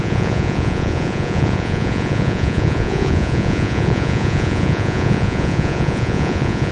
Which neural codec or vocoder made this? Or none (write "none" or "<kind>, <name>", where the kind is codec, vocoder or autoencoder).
vocoder, Vocos